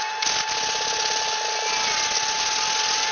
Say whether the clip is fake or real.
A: real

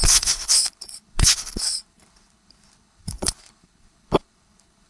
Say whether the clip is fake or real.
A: fake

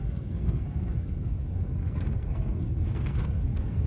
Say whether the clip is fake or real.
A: fake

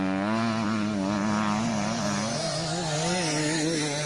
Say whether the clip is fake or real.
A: real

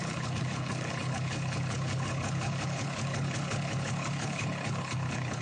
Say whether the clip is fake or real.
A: fake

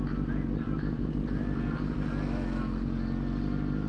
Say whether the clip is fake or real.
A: real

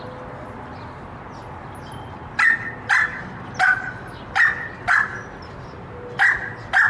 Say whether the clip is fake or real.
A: real